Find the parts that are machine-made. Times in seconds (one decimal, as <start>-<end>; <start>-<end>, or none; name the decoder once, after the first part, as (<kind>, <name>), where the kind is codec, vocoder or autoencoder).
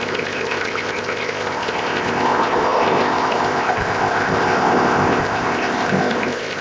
0.0-6.6 (codec, ZipCodec)